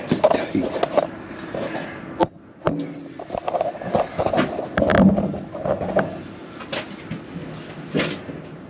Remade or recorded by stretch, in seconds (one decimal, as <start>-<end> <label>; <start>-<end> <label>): 0.0-8.7 recorded